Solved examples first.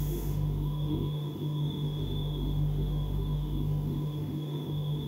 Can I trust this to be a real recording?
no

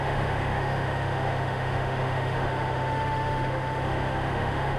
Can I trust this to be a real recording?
no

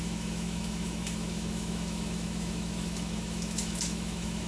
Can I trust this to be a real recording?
no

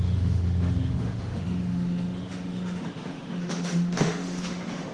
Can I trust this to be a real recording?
no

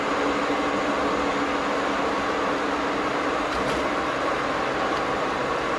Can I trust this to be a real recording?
yes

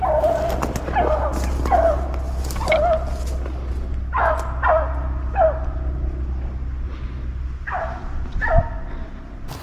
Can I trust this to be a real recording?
yes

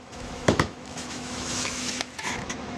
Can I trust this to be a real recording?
no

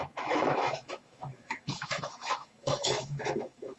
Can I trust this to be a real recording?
no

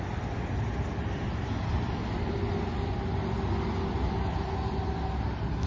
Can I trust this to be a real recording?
yes